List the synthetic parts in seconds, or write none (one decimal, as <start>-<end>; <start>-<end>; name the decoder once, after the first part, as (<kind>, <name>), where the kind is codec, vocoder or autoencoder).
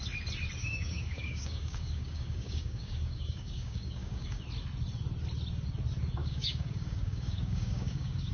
0.6-4.4 (codec, DAC); 6.2-8.3